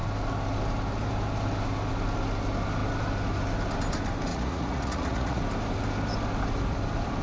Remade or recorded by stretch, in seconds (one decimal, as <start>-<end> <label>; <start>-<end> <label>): 0.0-4.3 recorded; 4.3-5.4 remade; 5.4-7.2 recorded